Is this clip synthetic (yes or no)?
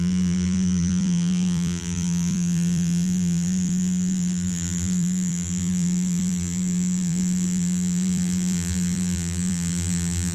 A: yes